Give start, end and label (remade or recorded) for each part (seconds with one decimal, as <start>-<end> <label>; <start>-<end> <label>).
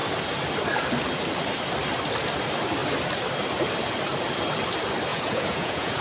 0.0-5.1 recorded; 5.1-6.0 remade